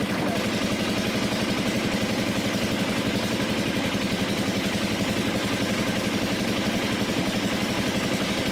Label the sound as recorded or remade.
recorded